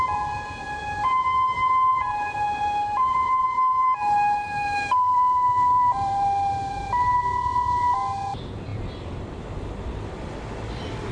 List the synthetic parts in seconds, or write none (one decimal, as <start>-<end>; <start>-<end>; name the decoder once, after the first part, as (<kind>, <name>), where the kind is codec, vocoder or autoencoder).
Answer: 1.9-7.2 (vocoder, BigVGAN v2)